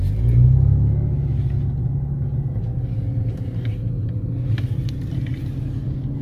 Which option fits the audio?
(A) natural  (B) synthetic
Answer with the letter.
A